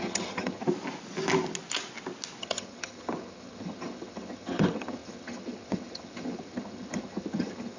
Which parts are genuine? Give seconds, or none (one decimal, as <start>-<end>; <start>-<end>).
0.6-2.4